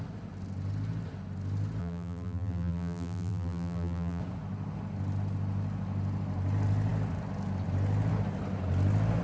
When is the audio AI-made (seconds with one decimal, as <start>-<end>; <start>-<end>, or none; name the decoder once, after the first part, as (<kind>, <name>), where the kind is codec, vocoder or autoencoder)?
1.8-4.2 (vocoder, BigVGAN v2)